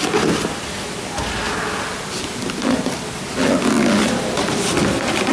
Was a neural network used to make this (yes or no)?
no